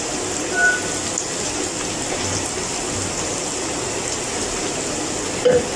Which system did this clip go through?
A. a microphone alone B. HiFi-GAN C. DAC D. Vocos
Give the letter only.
A